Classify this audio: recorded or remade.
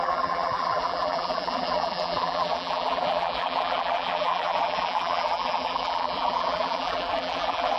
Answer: remade